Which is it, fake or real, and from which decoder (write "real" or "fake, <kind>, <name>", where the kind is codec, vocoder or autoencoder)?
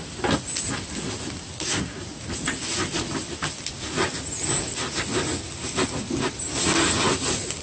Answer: real